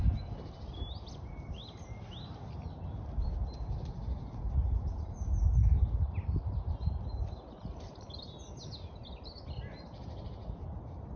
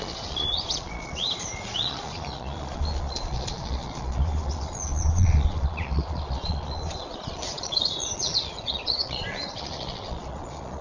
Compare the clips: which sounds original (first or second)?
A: first